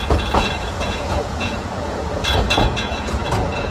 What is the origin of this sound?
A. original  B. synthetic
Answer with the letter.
B